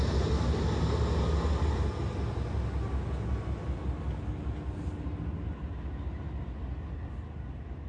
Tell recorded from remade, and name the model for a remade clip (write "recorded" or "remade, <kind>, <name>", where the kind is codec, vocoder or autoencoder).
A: recorded